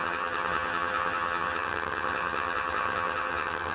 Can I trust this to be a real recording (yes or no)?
no